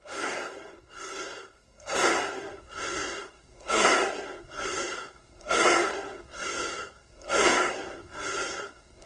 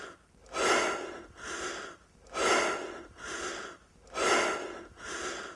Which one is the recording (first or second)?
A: second